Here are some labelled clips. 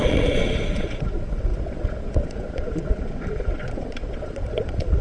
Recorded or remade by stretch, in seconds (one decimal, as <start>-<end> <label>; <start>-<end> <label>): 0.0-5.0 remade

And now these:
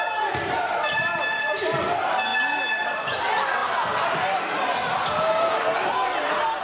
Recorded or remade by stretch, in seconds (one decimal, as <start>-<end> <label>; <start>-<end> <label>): 0.0-6.6 recorded

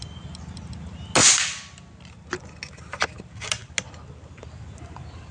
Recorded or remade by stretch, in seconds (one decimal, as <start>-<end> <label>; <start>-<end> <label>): 0.0-5.3 recorded

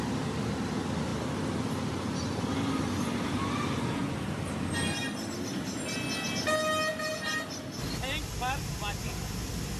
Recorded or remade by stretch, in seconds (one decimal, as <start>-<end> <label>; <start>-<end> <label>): 0.0-9.8 recorded

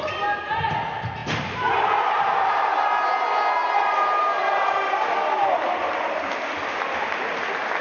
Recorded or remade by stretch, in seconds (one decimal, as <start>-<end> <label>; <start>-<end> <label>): 0.0-2.7 remade; 2.7-7.8 recorded

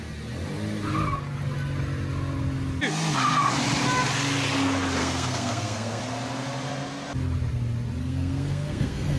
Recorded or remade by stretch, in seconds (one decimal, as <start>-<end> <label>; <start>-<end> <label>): 0.0-5.0 recorded; 5.0-6.0 remade; 6.0-8.0 recorded; 8.0-9.2 remade